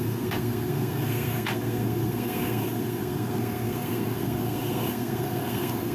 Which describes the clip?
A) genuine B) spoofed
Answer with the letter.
B